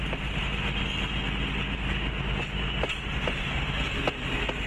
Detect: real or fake real